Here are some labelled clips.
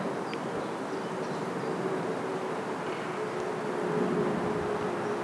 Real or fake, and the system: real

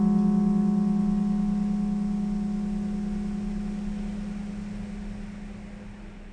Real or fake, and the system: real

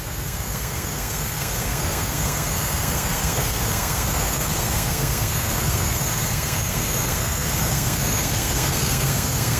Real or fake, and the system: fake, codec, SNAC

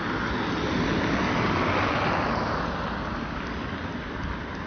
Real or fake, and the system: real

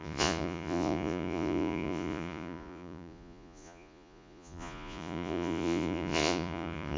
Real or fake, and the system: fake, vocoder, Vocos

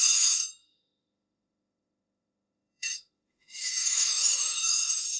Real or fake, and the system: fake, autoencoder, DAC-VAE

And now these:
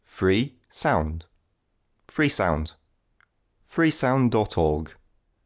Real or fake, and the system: real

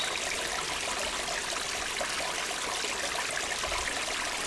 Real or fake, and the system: real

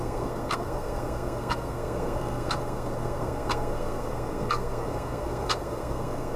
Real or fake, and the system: fake, codec, SNAC